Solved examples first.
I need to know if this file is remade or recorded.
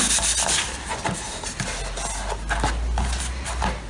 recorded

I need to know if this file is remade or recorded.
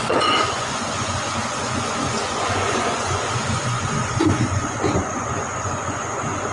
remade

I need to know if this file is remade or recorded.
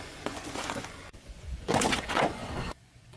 remade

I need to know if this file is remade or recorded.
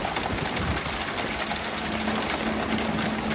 recorded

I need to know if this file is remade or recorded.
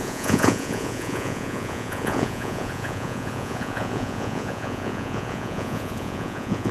remade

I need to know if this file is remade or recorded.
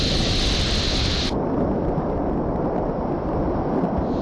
recorded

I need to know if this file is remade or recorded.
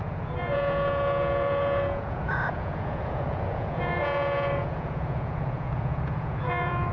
remade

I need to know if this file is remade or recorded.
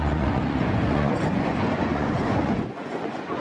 remade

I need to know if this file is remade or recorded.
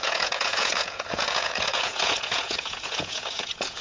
remade